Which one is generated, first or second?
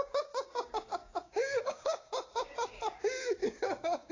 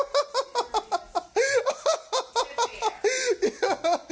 first